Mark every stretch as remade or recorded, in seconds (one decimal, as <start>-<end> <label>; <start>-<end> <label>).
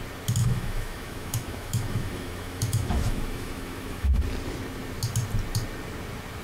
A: 0.0-0.4 recorded; 0.4-4.2 remade; 4.2-6.4 recorded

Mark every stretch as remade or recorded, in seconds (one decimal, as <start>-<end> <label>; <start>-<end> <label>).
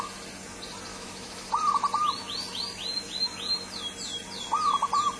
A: 0.0-0.9 recorded; 0.9-1.5 remade; 1.5-5.2 recorded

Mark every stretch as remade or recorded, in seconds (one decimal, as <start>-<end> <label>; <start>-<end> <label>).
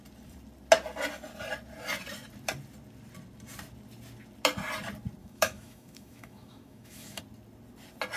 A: 0.0-5.2 recorded; 5.2-7.2 remade; 7.2-8.2 recorded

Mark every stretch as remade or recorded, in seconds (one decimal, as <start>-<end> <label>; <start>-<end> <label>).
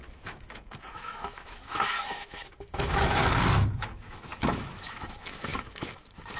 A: 0.0-3.2 remade; 3.2-3.8 recorded; 3.8-6.4 remade